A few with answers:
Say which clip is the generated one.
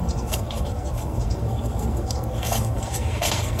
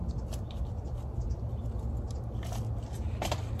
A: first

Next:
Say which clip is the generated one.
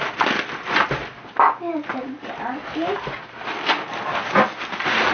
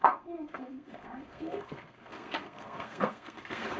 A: second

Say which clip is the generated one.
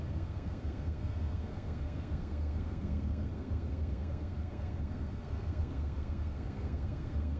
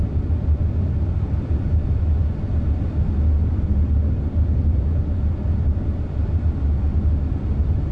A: first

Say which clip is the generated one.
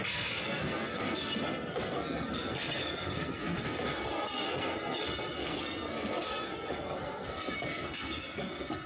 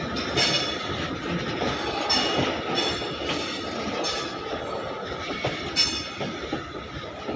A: first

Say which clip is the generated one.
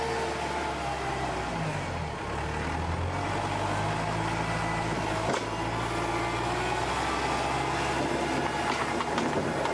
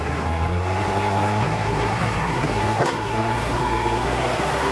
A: second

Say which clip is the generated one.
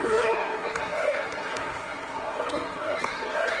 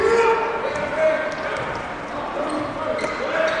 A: first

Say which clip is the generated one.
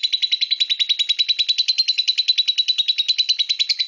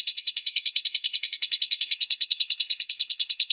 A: second